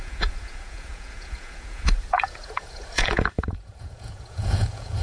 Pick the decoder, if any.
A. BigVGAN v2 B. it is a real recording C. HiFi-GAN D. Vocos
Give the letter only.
D